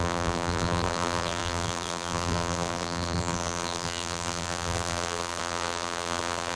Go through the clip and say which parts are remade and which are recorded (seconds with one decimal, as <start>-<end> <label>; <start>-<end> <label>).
0.0-6.6 remade